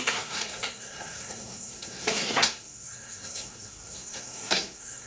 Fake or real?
fake